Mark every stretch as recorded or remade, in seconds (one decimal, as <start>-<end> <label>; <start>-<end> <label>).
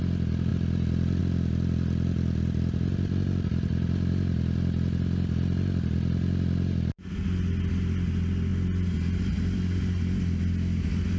0.0-0.5 recorded; 0.5-1.2 remade; 1.2-11.2 recorded